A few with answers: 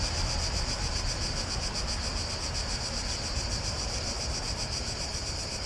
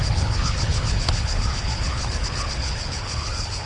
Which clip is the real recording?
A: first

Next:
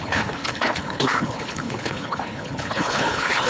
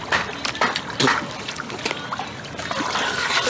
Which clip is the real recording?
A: second